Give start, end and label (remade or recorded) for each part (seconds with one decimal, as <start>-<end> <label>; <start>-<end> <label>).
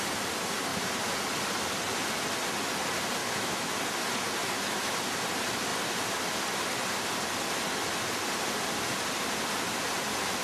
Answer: 0.0-3.2 recorded; 3.2-3.8 remade; 3.8-4.4 recorded; 4.4-5.0 remade; 5.0-10.4 recorded